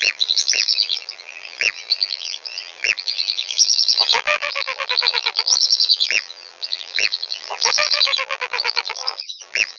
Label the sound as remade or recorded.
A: remade